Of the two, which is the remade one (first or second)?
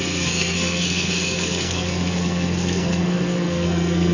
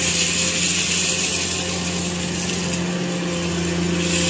first